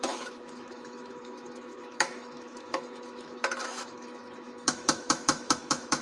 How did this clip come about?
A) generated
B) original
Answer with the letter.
A